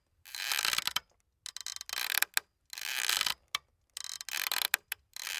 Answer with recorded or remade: recorded